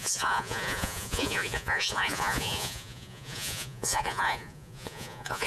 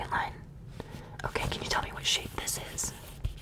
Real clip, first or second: second